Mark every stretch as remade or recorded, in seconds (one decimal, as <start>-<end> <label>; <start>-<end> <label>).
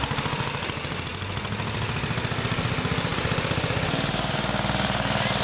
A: 0.0-5.4 recorded